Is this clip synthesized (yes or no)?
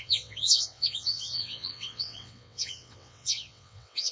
yes